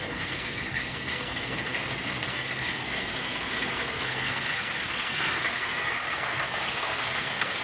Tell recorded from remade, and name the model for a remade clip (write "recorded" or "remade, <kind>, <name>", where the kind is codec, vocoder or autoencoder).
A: remade, codec, SNAC